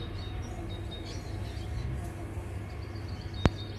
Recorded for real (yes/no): yes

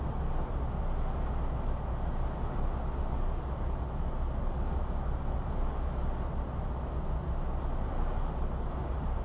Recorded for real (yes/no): yes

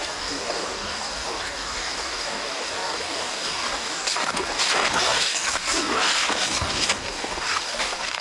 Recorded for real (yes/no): no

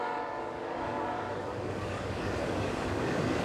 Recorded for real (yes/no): no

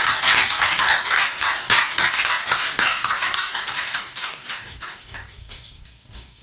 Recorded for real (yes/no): no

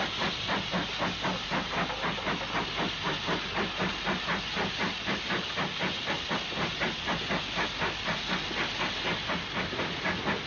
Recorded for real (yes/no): yes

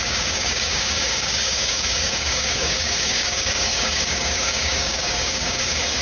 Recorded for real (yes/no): no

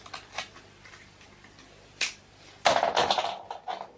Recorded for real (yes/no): yes